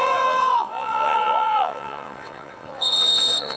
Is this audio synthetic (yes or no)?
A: yes